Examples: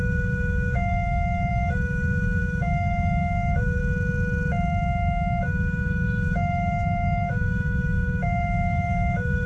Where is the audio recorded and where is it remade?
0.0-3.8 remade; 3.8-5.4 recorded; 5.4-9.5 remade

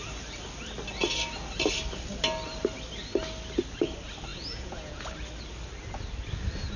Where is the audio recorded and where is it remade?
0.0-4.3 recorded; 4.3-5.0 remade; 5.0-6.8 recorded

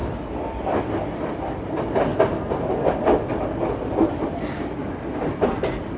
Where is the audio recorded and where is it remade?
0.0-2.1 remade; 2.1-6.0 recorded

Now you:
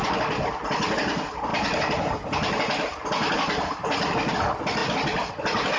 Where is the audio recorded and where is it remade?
0.0-5.8 recorded

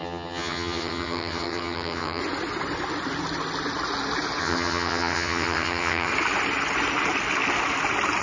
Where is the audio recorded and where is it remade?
0.0-2.2 remade; 2.2-4.4 recorded; 4.4-6.1 remade; 6.1-8.2 recorded

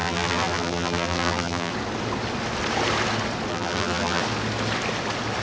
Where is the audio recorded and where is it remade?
0.0-1.7 remade; 1.7-3.5 recorded; 3.5-4.2 remade; 4.2-5.4 recorded

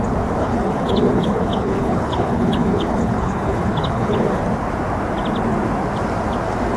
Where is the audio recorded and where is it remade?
0.0-0.4 recorded; 0.4-4.4 remade; 4.4-6.8 recorded